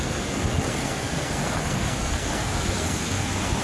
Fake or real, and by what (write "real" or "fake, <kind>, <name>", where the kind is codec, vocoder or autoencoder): fake, codec, SNAC